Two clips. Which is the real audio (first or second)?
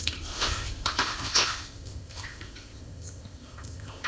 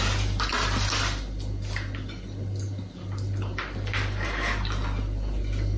second